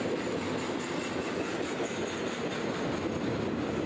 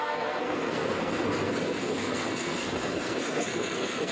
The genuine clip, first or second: first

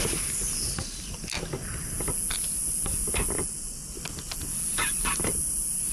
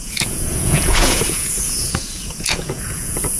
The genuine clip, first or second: first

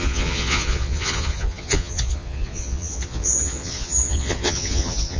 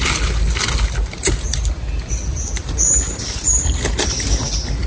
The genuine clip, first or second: second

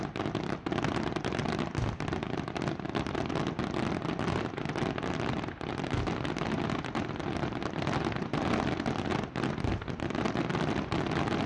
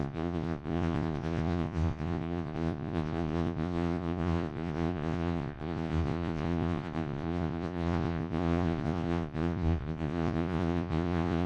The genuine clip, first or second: first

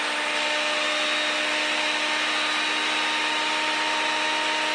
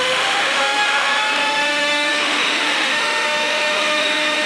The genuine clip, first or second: first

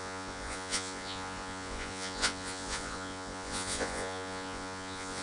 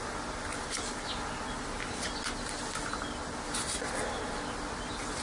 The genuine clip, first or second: second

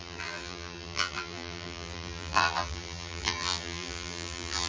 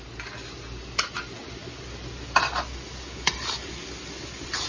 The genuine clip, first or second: second